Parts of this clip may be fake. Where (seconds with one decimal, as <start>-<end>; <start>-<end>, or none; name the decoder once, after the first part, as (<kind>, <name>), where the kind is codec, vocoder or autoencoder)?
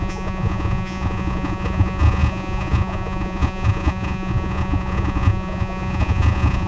0.0-6.7 (vocoder, Vocos)